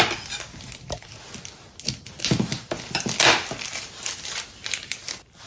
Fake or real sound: real